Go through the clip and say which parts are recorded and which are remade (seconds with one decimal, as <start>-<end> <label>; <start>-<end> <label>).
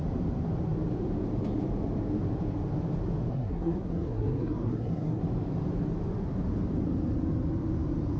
0.0-3.3 recorded; 3.3-5.2 remade; 5.2-8.2 recorded